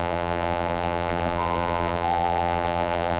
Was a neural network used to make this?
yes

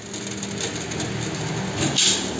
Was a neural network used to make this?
no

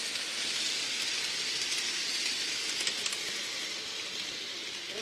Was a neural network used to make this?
no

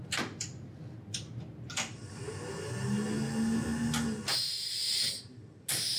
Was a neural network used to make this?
no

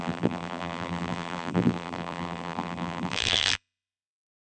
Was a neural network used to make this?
yes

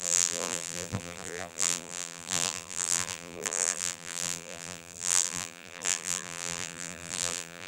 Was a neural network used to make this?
yes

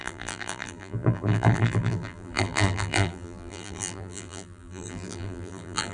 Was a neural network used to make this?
yes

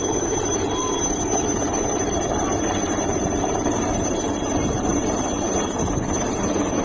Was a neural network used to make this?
yes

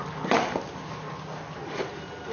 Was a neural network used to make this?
no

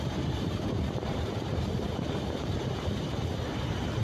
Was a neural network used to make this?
yes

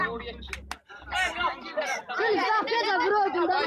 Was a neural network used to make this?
no